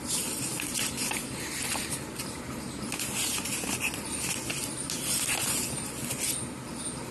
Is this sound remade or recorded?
recorded